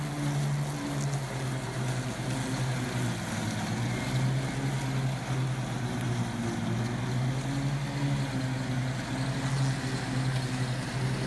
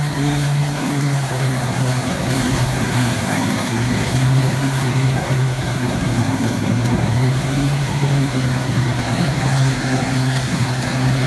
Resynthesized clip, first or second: second